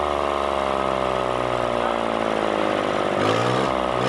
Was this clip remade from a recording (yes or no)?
no